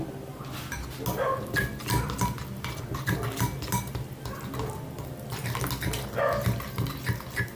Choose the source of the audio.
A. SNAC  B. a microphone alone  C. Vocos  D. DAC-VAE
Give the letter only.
B